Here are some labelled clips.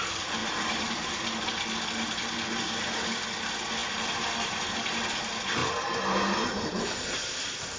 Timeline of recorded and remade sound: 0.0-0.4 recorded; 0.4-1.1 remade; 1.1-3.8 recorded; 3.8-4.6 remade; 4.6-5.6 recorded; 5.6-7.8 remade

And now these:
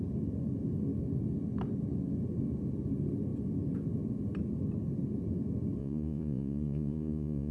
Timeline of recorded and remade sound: 0.0-5.8 recorded; 5.8-7.5 remade